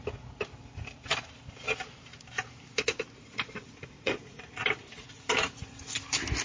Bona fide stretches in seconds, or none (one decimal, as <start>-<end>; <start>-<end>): 0.0-3.6; 4.6-6.4